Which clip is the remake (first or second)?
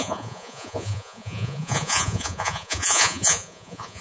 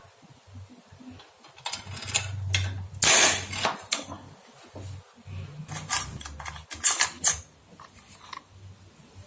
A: first